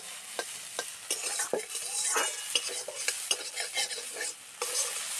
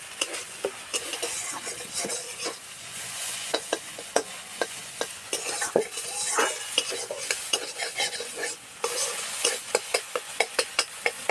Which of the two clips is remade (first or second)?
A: second